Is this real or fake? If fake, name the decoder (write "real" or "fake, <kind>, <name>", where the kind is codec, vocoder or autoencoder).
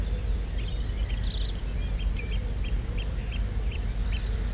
real